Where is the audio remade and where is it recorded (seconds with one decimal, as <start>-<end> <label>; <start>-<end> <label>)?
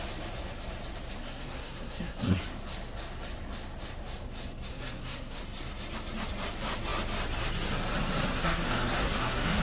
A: 0.0-1.2 recorded; 1.2-2.4 remade; 2.4-4.7 recorded; 4.7-5.4 remade; 5.4-8.3 recorded; 8.3-9.6 remade